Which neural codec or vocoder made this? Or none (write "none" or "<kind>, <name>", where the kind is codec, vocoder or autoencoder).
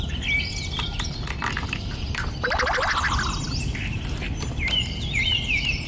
vocoder, BigVGAN v2